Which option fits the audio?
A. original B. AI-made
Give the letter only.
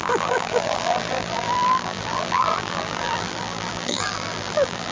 B